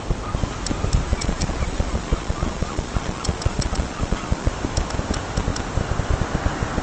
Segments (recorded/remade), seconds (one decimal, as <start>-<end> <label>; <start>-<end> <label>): 0.0-1.1 recorded; 1.1-4.5 remade; 4.5-6.8 recorded